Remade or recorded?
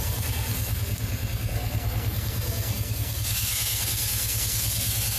remade